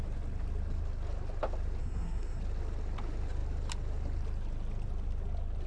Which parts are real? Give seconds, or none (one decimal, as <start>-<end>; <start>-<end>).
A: 0.0-1.8; 2.4-5.7